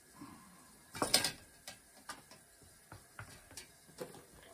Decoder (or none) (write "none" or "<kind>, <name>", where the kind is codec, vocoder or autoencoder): none